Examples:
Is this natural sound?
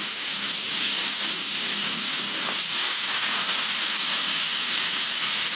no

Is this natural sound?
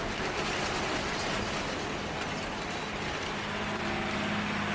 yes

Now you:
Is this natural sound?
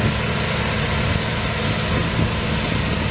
yes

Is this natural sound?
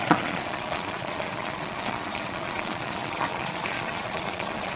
no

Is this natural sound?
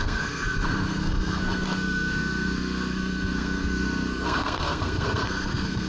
no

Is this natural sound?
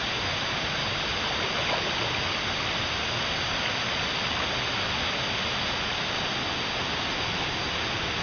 yes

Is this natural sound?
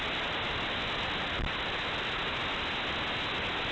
yes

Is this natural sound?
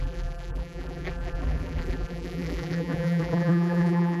no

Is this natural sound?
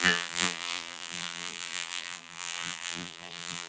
no